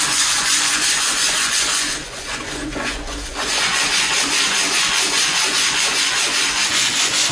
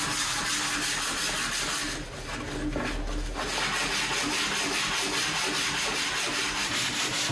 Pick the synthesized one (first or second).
first